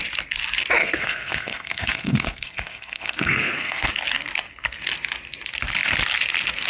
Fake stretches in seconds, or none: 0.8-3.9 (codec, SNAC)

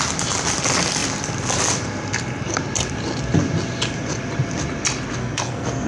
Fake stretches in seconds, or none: 5.2-5.9 (codec, SNAC)